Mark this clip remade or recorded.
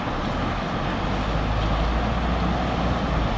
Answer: recorded